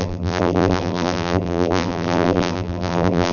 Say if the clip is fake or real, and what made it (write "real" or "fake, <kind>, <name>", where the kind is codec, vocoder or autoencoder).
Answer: fake, vocoder, BigVGAN v2